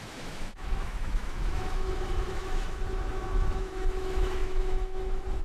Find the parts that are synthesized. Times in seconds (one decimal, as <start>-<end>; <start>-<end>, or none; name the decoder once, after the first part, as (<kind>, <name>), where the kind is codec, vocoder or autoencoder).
0.0-5.4 (autoencoder, DAC-VAE)